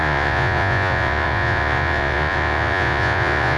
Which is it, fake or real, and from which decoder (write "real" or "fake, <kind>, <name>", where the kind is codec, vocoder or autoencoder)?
fake, vocoder, Vocos